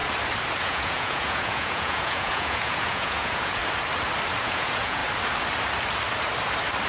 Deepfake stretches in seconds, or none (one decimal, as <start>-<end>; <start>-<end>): 0.6-3.6; 4.4-5.0